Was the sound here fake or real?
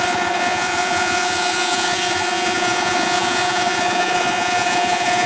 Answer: fake